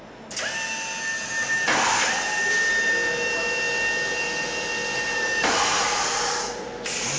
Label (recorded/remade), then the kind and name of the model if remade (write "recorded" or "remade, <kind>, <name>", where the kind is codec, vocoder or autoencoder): recorded